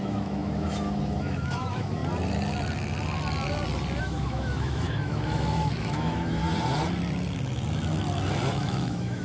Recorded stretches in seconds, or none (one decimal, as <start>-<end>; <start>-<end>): 2.0-4.0; 6.4-8.5

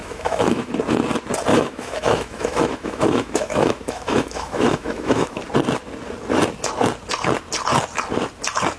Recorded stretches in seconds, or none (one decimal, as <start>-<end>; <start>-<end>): 0.7-1.5; 5.4-8.8

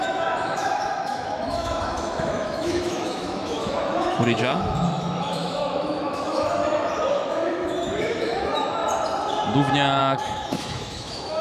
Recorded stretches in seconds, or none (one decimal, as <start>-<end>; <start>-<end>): 6.6-7.1; 8.8-10.0

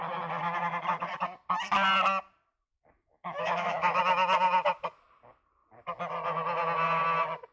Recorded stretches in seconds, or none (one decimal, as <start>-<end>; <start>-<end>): 0.0-2.7; 4.0-7.5

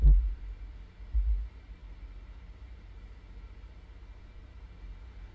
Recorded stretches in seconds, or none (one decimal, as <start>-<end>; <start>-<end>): 0.0-5.3

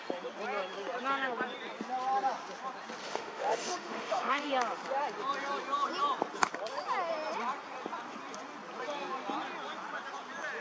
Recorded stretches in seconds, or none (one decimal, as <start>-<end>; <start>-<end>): 0.0-3.0; 4.5-10.6

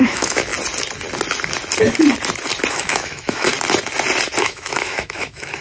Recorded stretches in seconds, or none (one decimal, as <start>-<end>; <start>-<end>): 0.5-2.7; 3.5-4.4